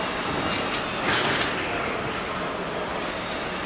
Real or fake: real